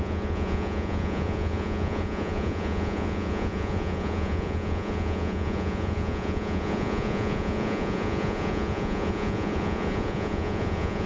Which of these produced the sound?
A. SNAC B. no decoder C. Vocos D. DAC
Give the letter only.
C